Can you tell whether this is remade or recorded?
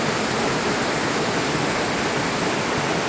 recorded